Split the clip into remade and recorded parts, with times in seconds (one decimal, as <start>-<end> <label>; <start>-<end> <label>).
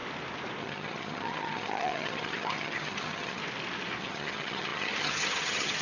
0.0-0.6 recorded; 0.6-3.4 remade; 3.4-4.0 recorded; 4.0-5.8 remade